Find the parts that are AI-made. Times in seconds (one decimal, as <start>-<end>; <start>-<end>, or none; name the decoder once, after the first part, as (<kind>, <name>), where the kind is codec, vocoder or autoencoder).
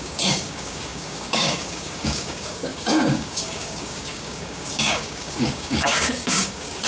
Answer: 0.0-6.9 (codec, DAC)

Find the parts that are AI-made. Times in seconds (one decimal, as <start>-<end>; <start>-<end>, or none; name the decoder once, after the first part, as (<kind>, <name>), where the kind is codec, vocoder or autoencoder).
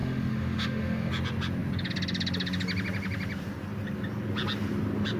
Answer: 0.0-1.1 (autoencoder, DAC-VAE)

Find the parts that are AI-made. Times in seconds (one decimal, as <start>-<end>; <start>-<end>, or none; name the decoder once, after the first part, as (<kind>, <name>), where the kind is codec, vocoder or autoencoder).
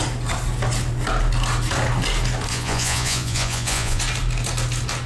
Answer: 2.5-4.0 (vocoder, Vocos)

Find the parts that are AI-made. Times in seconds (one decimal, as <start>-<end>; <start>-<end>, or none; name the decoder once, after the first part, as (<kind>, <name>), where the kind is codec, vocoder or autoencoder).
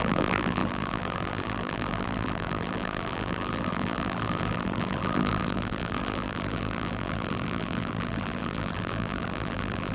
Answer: 0.0-9.9 (vocoder, BigVGAN v2)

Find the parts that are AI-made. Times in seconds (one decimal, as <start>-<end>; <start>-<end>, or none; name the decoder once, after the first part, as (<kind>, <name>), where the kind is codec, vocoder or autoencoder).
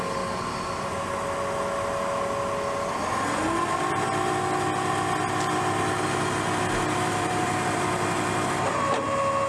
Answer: 7.1-7.8 (vocoder, BigVGAN v2)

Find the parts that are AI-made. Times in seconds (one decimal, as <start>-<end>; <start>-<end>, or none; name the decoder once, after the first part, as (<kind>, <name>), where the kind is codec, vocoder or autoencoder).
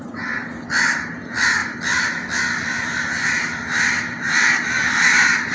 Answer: none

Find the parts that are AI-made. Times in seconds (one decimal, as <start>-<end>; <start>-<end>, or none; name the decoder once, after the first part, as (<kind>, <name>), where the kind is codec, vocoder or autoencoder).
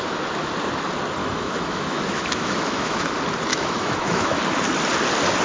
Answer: 1.2-3.1 (autoencoder, DAC-VAE); 3.5-4.4